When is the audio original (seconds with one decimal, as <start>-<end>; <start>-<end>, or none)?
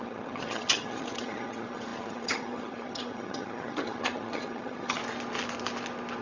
5.0-6.2